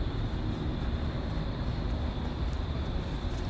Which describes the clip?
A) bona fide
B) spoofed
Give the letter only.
A